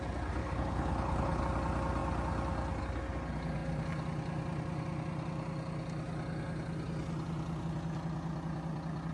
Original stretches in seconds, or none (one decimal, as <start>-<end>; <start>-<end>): 0.0-0.4; 1.4-9.1